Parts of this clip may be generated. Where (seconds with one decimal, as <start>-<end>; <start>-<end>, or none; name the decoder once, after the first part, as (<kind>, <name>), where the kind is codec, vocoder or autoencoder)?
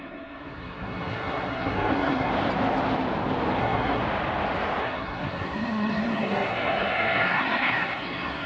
0.0-2.3 (codec, SNAC); 3.6-4.0; 4.8-8.5